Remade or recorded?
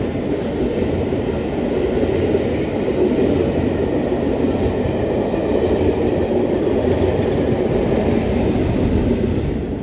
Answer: recorded